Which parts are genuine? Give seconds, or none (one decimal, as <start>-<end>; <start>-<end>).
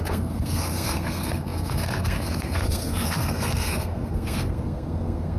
none